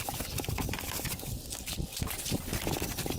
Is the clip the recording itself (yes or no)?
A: yes